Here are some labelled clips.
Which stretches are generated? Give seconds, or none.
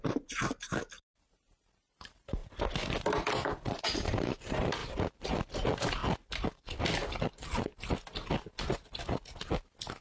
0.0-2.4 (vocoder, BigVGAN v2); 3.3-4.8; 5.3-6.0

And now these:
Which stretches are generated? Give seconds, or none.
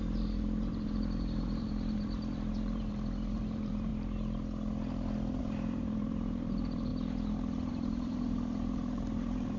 0.0-3.9 (vocoder, BigVGAN v2); 5.4-6.9; 7.7-9.6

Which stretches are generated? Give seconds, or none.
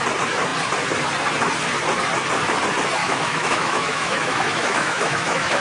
3.0-5.6 (autoencoder, DAC-VAE)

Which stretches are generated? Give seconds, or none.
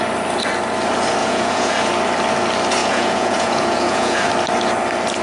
1.2-1.9 (vocoder, Vocos); 2.8-4.3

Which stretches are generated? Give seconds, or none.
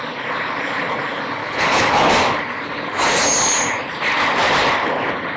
1.4-2.1 (codec, HILCodec)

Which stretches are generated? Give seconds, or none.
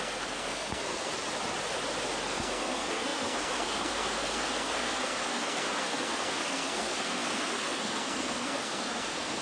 0.0-1.1 (codec, SNAC); 2.3-9.4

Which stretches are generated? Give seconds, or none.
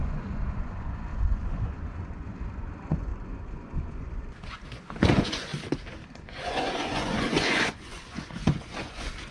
0.0-5.5 (vocoder, Vocos); 6.1-9.3